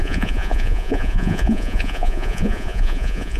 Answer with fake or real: fake